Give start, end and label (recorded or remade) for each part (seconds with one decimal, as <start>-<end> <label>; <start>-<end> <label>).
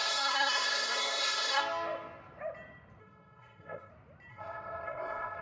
0.0-1.6 remade; 1.6-3.0 recorded; 3.0-3.9 remade; 3.9-4.3 recorded; 4.3-5.4 remade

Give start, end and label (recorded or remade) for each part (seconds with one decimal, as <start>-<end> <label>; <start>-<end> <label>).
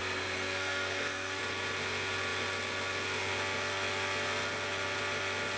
0.0-1.4 remade; 1.4-5.6 recorded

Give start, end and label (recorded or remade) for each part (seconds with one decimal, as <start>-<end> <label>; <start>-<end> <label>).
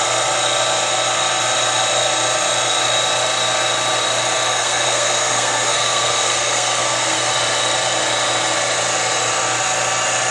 0.0-4.5 recorded; 4.5-7.3 remade; 7.3-10.3 recorded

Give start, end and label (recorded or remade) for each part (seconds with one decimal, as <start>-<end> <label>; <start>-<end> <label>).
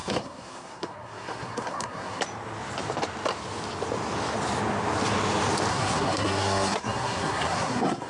0.0-2.2 remade; 2.2-5.7 recorded; 5.7-8.1 remade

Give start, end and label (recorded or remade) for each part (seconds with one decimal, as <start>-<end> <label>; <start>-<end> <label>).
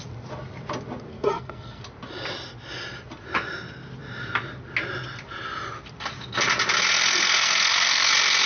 0.0-1.1 recorded; 1.1-1.8 remade; 1.8-6.9 recorded; 6.9-8.1 remade; 8.1-8.5 recorded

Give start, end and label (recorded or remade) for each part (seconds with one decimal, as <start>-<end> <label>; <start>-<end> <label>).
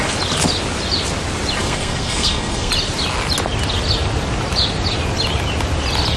0.0-1.6 recorded; 1.6-2.7 remade; 2.7-6.2 recorded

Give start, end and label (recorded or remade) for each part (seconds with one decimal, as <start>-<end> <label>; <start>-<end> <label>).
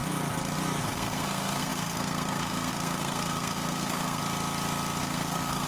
0.0-0.8 recorded; 0.8-4.2 remade; 4.2-5.0 recorded; 5.0-5.7 remade